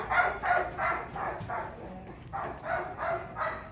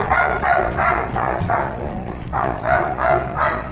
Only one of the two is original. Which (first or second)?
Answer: first